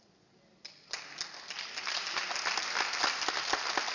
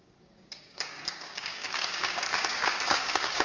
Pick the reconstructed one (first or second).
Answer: second